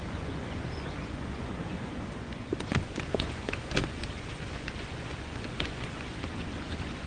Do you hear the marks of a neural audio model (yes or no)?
yes